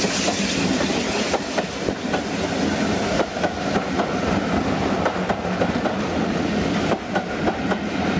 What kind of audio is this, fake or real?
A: real